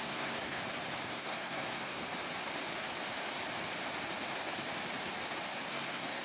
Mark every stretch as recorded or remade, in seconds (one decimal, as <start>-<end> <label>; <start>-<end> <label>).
0.0-0.6 remade; 0.6-1.1 recorded; 1.1-2.0 remade; 2.0-5.7 recorded; 5.7-6.2 remade